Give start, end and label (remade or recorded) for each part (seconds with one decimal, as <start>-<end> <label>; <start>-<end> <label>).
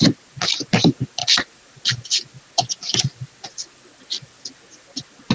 0.0-5.3 recorded